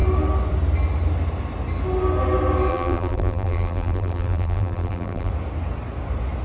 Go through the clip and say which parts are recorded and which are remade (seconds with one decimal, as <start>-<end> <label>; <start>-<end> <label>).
0.0-2.7 recorded; 2.7-5.3 remade; 5.3-6.4 recorded